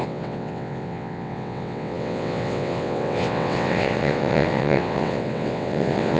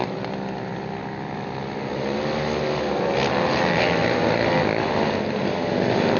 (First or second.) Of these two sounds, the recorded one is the second